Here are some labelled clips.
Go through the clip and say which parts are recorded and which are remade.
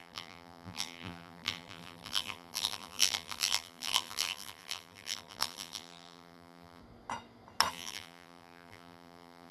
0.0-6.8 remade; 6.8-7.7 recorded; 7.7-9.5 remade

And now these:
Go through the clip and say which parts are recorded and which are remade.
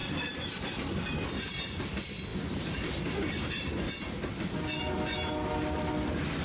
0.0-2.3 recorded; 2.3-3.9 remade; 3.9-6.4 recorded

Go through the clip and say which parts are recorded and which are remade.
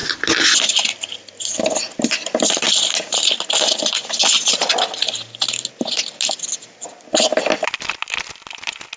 0.0-9.0 recorded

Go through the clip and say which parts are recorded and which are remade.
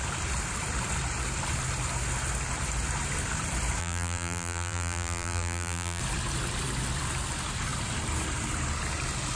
0.0-3.8 recorded; 3.8-6.0 remade; 6.0-9.4 recorded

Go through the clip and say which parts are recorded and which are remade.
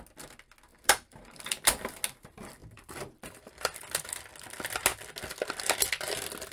0.0-0.7 recorded; 0.7-2.0 remade; 2.0-2.6 recorded; 2.6-4.3 remade; 4.3-6.5 recorded